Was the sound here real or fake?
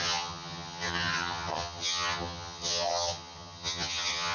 fake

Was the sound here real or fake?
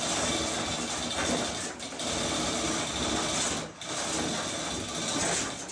real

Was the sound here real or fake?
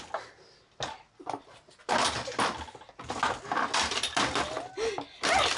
real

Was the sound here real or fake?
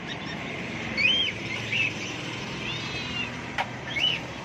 fake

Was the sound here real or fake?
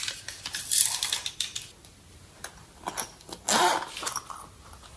real